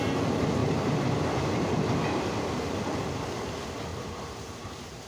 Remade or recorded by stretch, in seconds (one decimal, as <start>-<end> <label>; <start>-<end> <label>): 0.0-3.9 recorded; 3.9-5.1 remade